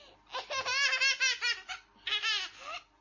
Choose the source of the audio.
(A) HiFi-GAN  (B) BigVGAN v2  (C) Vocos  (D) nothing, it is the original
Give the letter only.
D